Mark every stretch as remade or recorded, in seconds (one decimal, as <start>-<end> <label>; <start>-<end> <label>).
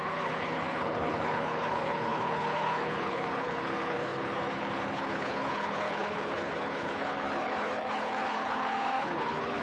0.0-9.6 remade